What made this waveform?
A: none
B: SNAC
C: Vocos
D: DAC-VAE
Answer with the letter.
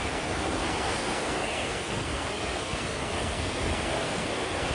B